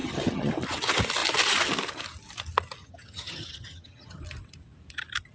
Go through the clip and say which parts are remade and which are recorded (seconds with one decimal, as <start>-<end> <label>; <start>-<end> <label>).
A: 0.0-0.5 remade; 0.5-2.8 recorded; 2.8-4.2 remade; 4.2-5.3 recorded